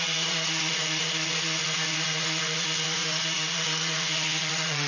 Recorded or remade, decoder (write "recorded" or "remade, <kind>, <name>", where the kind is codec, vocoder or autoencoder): remade, vocoder, Vocos